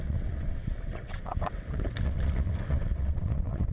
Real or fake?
fake